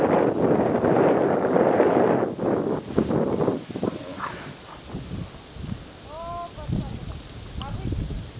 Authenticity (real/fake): real